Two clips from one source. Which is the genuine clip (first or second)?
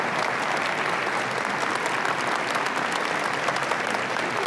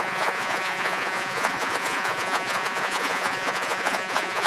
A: first